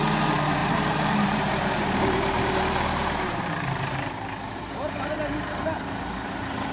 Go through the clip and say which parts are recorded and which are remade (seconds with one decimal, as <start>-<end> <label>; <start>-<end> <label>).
0.0-0.6 recorded; 0.6-4.1 remade; 4.1-6.7 recorded